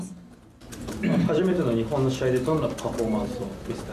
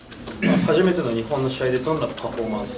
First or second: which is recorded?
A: second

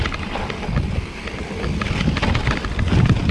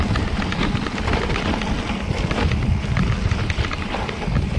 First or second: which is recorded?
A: first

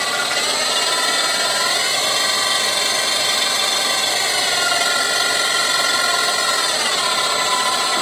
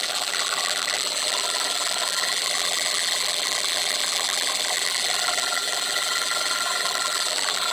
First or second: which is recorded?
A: first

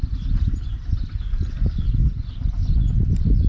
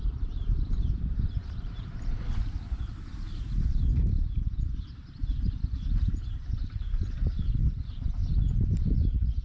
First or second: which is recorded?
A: first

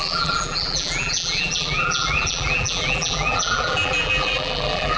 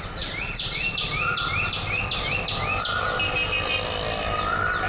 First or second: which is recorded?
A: second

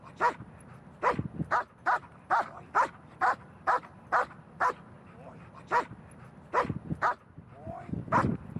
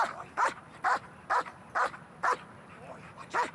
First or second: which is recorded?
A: first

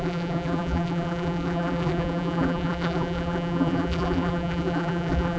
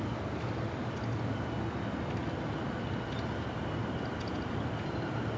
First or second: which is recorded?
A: second